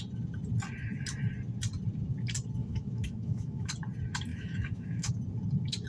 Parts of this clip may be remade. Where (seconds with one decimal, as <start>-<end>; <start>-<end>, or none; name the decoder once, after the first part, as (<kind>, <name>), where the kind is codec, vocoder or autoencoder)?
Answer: 2.6-3.7 (autoencoder, DAC-VAE); 4.3-5.1